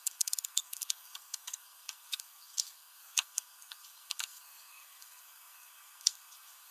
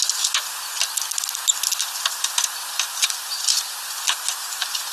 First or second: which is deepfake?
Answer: first